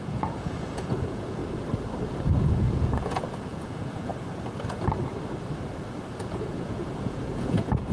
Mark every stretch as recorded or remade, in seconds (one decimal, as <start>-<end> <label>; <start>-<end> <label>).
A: 0.0-1.4 remade; 1.4-2.1 recorded; 2.1-4.1 remade; 4.1-6.2 recorded; 6.2-7.9 remade

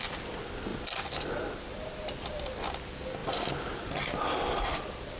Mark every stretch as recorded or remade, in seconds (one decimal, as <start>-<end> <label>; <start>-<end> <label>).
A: 0.0-0.7 recorded; 0.7-1.4 remade; 1.4-5.2 recorded